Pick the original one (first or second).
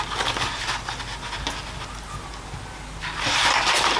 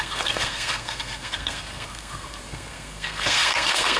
first